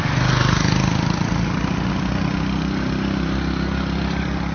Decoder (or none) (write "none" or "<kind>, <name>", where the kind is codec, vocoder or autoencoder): none